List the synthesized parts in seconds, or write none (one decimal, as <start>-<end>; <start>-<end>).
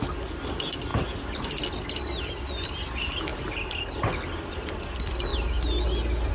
none